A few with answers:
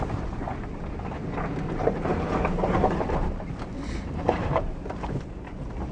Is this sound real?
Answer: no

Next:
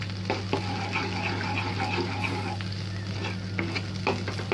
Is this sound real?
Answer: yes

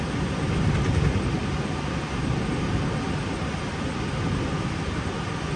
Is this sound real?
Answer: yes